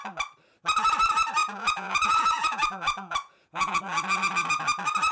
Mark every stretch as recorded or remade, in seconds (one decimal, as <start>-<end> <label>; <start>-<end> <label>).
0.0-1.4 recorded; 1.4-3.8 remade; 3.8-5.1 recorded